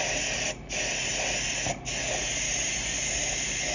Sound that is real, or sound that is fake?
real